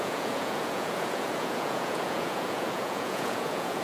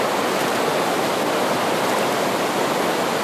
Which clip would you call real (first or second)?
second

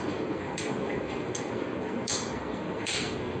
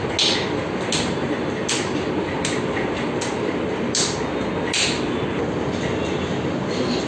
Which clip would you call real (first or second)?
second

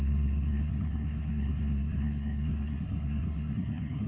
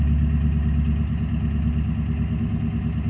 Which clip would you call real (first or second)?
second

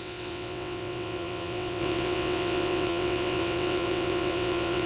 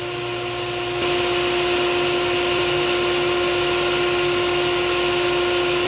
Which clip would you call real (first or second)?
second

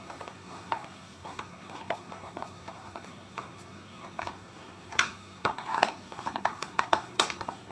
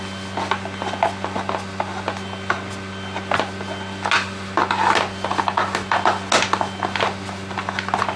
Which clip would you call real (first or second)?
second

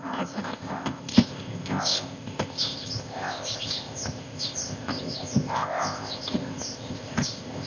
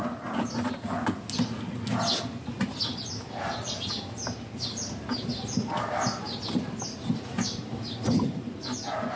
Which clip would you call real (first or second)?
second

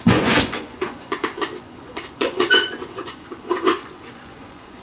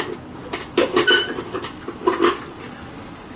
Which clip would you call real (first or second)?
second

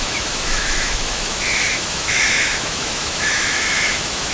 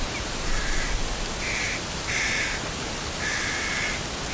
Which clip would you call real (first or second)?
second